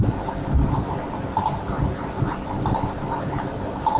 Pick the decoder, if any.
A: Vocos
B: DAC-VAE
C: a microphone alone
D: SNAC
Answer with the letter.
C